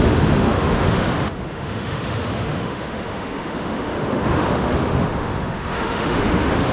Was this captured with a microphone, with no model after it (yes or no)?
no